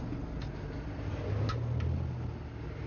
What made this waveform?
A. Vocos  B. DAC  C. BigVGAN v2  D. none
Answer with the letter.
D